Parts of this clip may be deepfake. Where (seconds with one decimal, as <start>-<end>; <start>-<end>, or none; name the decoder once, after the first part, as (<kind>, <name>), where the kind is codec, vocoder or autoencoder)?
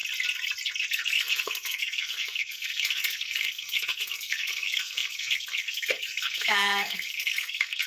0.9-7.9 (codec, SNAC)